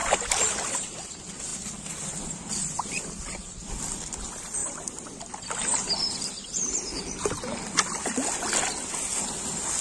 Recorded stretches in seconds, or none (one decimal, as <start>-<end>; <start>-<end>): 0.7-1.5; 4.1-4.6; 7.0-9.8